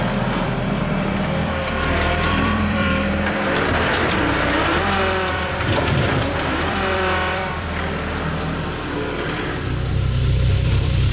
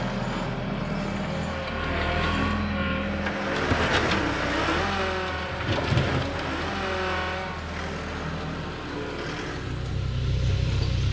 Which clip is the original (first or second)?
second